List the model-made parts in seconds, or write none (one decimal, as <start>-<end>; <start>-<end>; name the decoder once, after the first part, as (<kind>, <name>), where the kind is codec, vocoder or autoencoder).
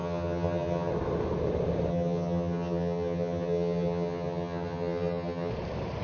0.0-0.9 (vocoder, HiFi-GAN); 1.9-5.5